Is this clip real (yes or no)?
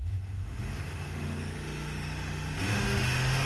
no